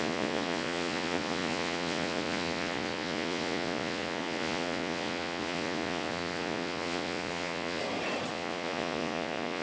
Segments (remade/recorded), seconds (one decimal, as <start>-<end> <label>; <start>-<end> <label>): 0.0-7.8 remade; 7.8-8.3 recorded; 8.3-9.6 remade